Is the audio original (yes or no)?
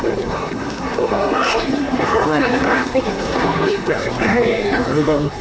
no